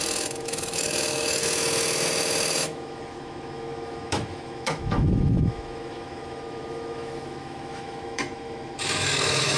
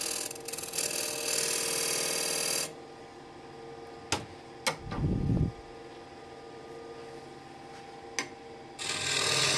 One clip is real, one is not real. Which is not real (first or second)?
first